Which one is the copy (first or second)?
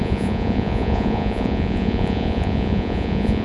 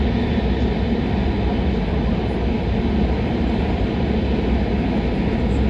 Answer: first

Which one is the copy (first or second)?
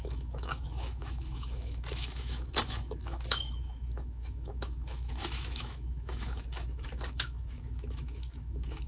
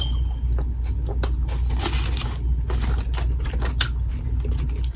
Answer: first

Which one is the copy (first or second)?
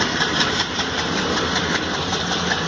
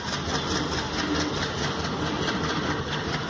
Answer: first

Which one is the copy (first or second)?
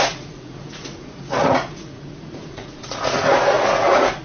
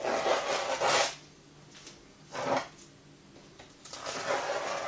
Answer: first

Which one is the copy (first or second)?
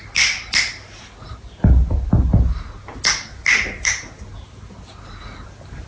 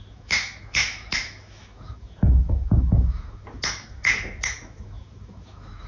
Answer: second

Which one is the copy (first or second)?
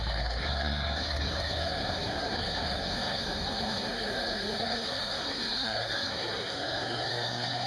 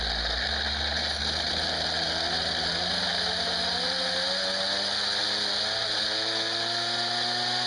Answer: first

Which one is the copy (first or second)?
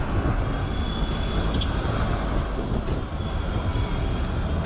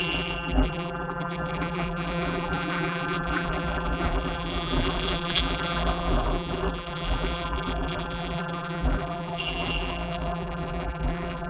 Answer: second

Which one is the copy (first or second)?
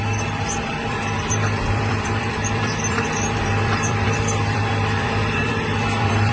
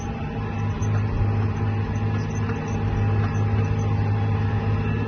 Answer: first